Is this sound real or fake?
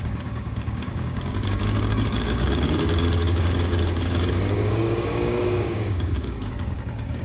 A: fake